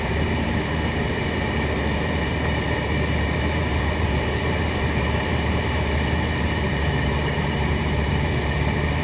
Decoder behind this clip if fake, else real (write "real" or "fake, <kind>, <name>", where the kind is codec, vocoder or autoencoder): fake, vocoder, BigVGAN v2